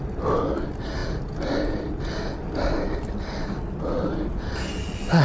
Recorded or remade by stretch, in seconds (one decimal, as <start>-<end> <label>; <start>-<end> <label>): 0.0-5.2 recorded